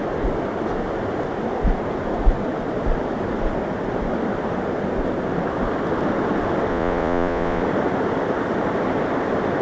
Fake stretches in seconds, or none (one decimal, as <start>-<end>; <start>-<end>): 6.7-7.6